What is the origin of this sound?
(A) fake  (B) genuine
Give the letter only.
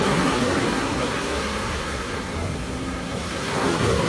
A